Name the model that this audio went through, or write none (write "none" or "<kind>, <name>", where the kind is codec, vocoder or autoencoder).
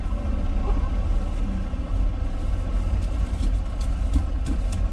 none